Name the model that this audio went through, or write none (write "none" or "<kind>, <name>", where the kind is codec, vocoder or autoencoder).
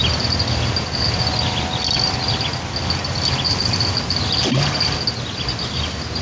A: none